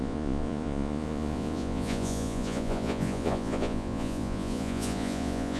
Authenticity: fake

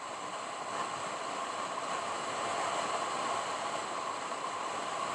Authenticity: real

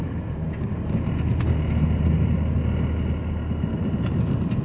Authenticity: real